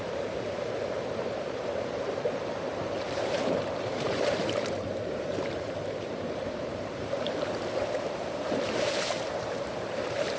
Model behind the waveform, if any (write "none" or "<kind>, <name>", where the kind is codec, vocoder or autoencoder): vocoder, BigVGAN v2